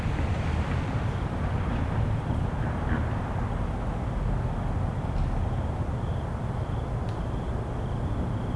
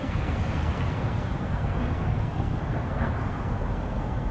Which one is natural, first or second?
first